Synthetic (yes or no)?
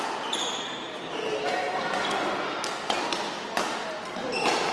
no